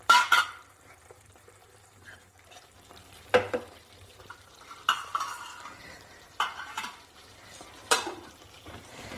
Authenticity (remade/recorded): remade